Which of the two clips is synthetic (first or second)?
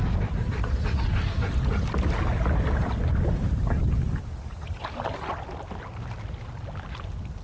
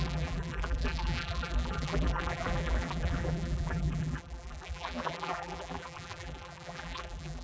second